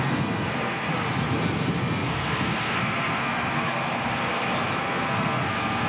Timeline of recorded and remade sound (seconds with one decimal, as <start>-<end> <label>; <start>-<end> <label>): 0.0-0.9 remade; 0.9-1.8 recorded; 1.8-3.7 remade; 3.7-4.8 recorded; 4.8-5.9 remade